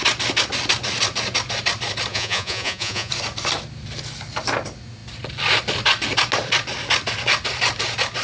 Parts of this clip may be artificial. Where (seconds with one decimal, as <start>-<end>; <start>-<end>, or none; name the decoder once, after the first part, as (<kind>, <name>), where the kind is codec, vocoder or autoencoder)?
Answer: 2.1-3.1 (vocoder, Vocos)